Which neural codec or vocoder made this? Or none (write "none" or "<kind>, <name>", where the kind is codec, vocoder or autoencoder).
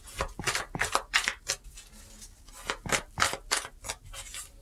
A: none